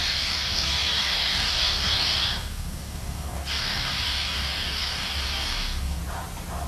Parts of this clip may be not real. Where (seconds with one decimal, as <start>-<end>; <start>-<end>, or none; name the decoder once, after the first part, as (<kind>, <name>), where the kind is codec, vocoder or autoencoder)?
0.0-6.0 (codec, DAC)